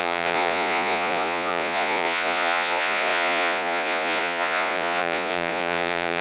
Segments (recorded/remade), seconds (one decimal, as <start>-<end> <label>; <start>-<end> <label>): 0.0-6.2 remade